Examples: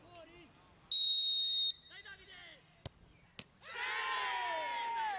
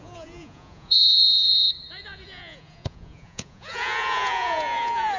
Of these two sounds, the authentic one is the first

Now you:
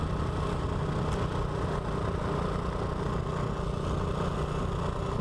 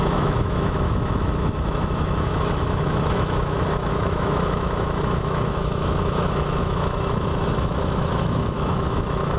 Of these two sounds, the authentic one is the first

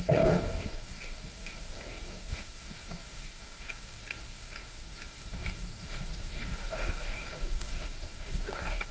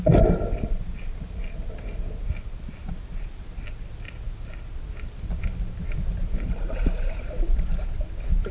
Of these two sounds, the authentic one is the second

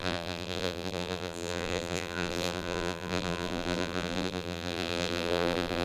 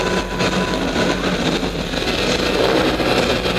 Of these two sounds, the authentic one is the second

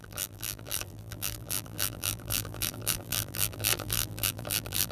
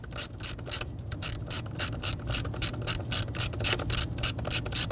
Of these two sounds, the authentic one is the second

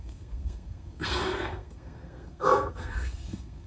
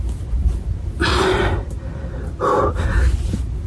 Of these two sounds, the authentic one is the second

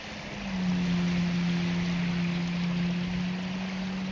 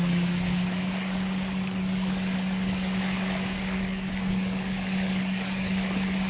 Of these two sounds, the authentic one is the first